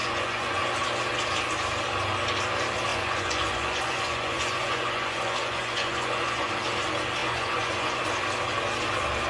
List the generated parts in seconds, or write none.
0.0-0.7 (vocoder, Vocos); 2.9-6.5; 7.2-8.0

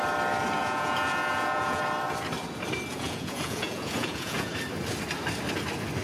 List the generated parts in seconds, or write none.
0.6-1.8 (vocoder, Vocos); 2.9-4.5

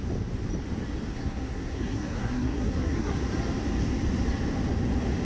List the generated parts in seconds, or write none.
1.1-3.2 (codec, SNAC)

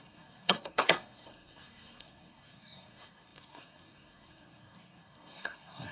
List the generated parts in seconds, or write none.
0.0-5.9 (codec, SNAC)

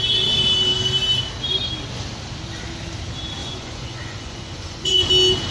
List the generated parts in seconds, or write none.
3.4-5.1 (vocoder, Vocos)

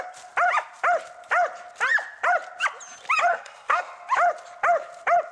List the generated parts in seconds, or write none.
3.3-3.8 (codec, SNAC)

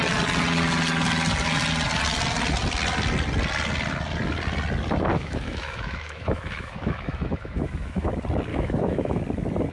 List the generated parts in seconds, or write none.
5.1-8.1 (autoencoder, DAC-VAE); 8.5-9.2

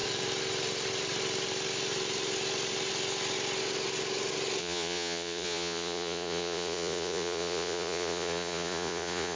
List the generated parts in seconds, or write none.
4.6-9.4 (vocoder, Vocos)